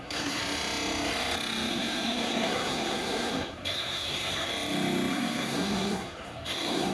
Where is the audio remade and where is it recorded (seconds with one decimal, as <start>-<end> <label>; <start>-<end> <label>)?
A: 0.0-0.4 remade; 0.4-1.7 recorded; 1.7-4.5 remade; 4.5-5.1 recorded; 5.1-6.9 remade